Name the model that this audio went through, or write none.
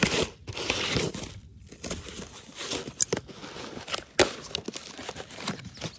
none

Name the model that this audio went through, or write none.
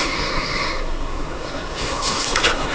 codec, SNAC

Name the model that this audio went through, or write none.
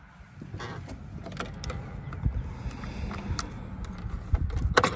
none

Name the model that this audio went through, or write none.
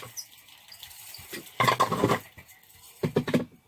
none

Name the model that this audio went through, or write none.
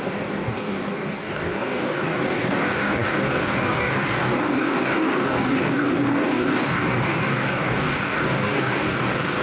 codec, DAC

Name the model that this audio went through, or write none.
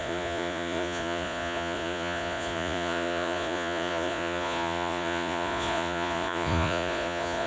vocoder, Vocos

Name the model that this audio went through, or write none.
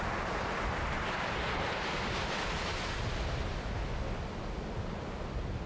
none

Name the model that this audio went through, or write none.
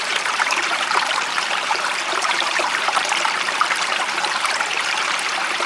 vocoder, BigVGAN v2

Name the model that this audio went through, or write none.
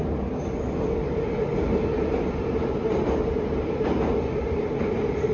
none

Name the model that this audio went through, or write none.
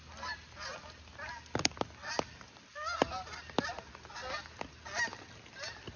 none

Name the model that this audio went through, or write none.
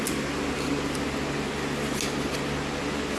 none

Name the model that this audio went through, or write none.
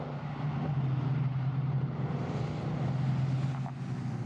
none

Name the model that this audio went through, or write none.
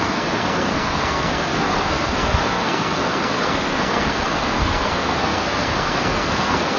codec, SNAC